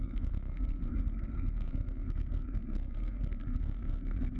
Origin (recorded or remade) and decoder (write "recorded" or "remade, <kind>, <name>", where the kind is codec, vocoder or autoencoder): remade, codec, SNAC